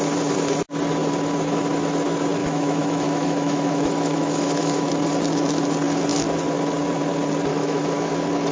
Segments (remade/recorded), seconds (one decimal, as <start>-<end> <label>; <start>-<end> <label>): 0.0-2.4 recorded; 2.4-4.9 remade; 4.9-7.5 recorded; 7.5-8.1 remade; 8.1-8.5 recorded